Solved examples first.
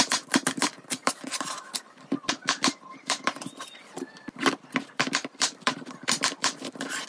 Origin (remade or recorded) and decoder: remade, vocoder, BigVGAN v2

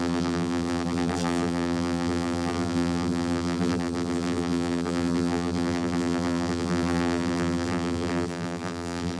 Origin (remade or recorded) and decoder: remade, vocoder, BigVGAN v2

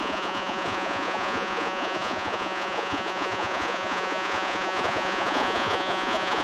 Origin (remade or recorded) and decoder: remade, vocoder, Vocos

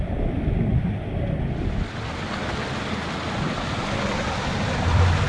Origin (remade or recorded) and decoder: recorded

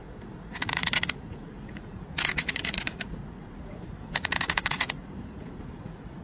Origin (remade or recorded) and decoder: remade, vocoder, Vocos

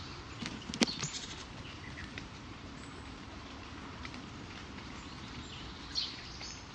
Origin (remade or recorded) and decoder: remade, vocoder, BigVGAN v2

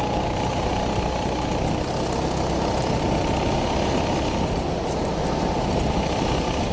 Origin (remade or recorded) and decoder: recorded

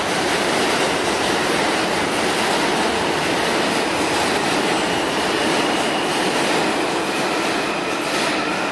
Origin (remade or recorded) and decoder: recorded